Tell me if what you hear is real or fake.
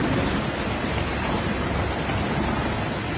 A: real